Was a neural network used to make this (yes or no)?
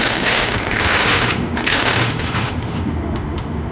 yes